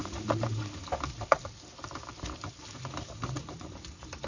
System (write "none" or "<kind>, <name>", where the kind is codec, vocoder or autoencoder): none